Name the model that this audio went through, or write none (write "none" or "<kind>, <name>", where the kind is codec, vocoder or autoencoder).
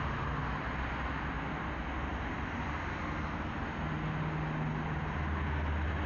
none